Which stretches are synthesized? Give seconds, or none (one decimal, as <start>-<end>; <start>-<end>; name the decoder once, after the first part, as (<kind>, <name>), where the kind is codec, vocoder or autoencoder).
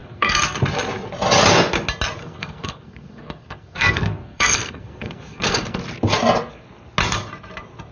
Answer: 0.0-0.6 (codec, SNAC); 2.2-5.8